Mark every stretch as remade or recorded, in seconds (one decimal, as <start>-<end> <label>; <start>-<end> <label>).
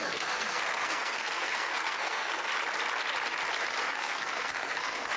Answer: 0.0-2.5 remade; 2.5-3.8 recorded; 3.8-5.2 remade